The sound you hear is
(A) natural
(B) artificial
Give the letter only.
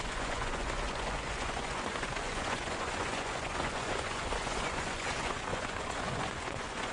B